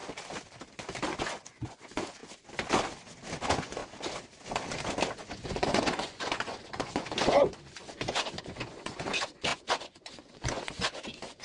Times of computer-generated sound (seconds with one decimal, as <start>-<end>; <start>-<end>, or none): 1.2-2.2; 3.4-3.8; 5.2-11.4